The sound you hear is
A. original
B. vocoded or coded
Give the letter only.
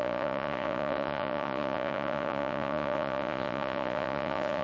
B